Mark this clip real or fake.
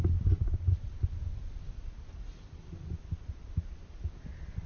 real